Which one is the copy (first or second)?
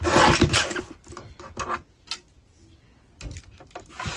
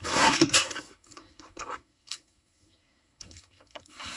second